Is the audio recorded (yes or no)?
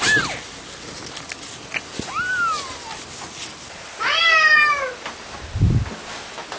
yes